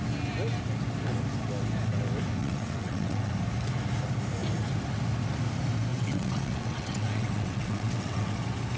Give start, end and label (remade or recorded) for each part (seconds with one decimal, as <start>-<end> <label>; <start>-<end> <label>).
0.0-2.4 recorded; 2.4-3.3 remade; 3.3-5.9 recorded; 5.9-8.4 remade; 8.4-8.8 recorded